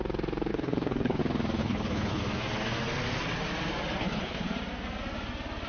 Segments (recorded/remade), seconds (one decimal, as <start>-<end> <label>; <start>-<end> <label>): 0.0-0.5 recorded; 0.5-1.2 remade; 1.2-1.6 recorded; 1.6-2.2 remade; 2.2-4.0 recorded; 4.0-4.5 remade; 4.5-5.7 recorded